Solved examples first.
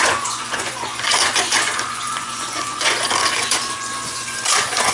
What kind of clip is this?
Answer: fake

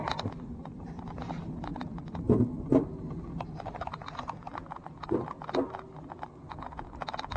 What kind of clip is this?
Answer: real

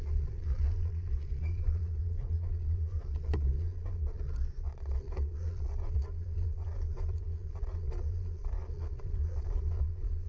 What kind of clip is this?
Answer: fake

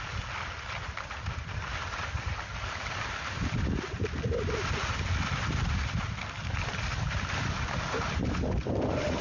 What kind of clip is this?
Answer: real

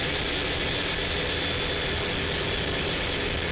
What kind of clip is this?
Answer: real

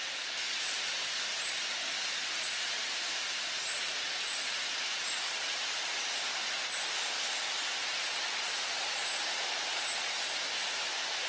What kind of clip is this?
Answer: real